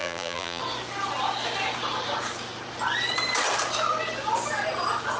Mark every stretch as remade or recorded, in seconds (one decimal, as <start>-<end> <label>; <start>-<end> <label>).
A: 0.0-0.6 remade; 0.6-5.2 recorded